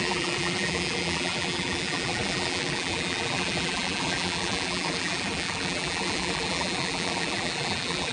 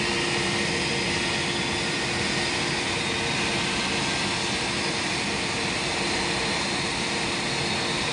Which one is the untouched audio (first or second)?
second